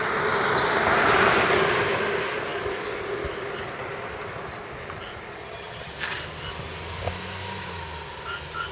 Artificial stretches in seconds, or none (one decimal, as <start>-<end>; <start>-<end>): 5.4-5.9